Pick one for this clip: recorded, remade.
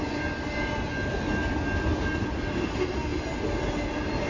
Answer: recorded